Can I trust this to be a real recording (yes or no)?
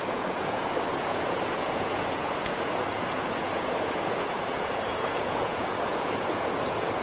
no